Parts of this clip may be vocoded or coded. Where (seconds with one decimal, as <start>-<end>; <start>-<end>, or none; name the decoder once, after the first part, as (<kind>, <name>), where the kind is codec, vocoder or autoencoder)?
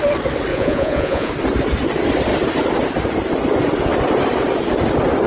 0.5-1.3 (vocoder, Vocos)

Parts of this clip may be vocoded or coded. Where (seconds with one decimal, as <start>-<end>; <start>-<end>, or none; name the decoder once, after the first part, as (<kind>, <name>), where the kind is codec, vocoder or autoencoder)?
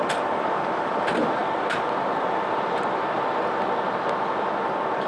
none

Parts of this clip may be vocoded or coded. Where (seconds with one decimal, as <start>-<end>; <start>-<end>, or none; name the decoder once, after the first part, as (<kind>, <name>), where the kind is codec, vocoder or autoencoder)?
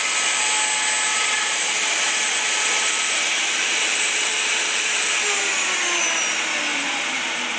1.1-5.5 (vocoder, BigVGAN v2); 6.7-7.6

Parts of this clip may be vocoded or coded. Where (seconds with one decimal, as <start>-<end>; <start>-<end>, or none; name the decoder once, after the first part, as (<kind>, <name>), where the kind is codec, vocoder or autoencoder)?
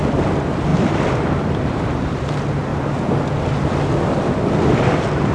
0.0-2.7 (vocoder, BigVGAN v2); 4.1-5.3